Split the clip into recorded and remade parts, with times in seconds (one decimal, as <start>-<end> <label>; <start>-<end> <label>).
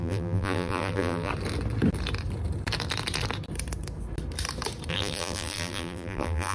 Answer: 0.0-1.3 remade; 1.3-4.9 recorded; 4.9-6.5 remade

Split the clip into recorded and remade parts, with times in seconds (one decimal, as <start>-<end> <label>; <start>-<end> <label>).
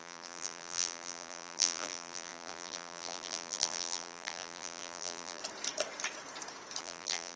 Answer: 0.0-5.4 remade; 5.4-6.8 recorded; 6.8-7.4 remade